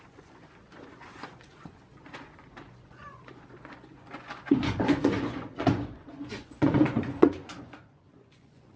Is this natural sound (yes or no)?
no